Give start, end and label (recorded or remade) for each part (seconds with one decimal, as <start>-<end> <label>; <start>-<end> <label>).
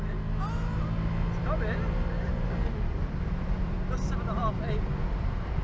0.0-2.3 recorded; 2.3-5.6 remade